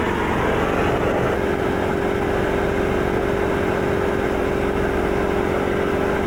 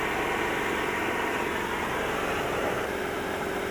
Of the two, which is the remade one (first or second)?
second